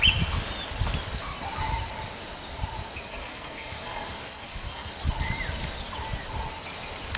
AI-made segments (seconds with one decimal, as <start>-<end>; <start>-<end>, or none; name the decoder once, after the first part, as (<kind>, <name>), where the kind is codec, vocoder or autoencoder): 3.1-4.9 (codec, SNAC)